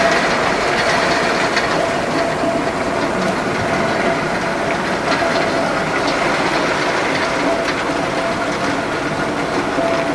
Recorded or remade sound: recorded